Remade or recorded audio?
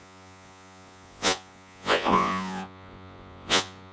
remade